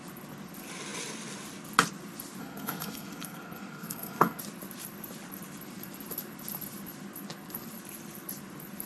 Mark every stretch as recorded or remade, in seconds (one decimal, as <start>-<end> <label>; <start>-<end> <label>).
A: 0.0-2.4 recorded; 2.4-4.4 remade; 4.4-8.9 recorded